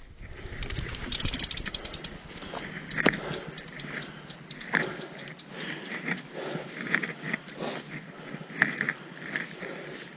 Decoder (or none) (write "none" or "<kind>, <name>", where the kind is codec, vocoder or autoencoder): none